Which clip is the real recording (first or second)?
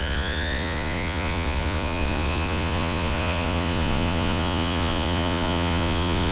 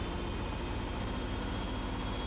second